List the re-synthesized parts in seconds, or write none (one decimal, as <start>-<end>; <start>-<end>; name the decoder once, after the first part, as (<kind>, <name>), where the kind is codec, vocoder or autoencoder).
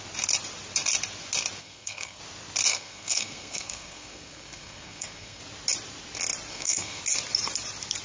1.6-2.2 (codec, SNAC); 2.7-5.4; 6.5-7.0